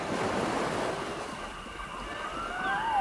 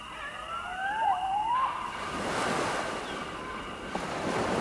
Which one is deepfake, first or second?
second